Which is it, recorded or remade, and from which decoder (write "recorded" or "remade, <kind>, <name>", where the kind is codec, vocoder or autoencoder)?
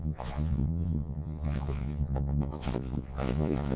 remade, vocoder, Vocos